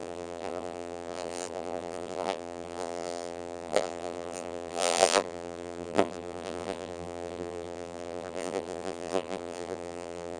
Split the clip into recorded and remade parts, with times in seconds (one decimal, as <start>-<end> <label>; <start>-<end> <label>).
0.0-10.4 remade